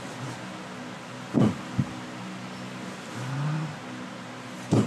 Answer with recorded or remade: recorded